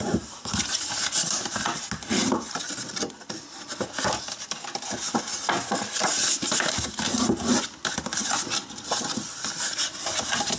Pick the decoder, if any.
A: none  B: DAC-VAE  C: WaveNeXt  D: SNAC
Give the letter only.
A